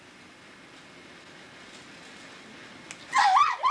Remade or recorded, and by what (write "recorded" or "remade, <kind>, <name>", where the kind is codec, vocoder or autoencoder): recorded